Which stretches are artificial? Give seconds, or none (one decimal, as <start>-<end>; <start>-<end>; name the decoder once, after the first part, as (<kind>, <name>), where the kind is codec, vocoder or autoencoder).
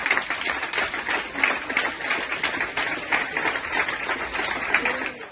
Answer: 0.0-0.9 (vocoder, BigVGAN v2); 2.9-4.1